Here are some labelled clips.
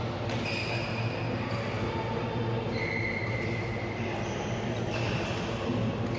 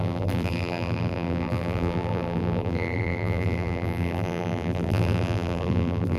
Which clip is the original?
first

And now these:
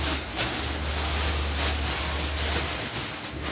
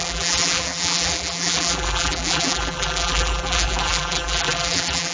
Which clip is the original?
first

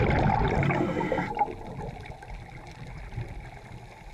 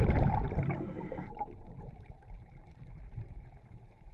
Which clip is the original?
first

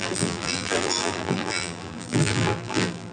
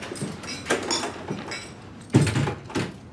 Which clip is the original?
second